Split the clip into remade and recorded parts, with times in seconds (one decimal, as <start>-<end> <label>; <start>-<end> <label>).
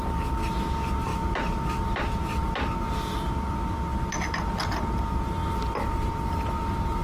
0.0-7.0 recorded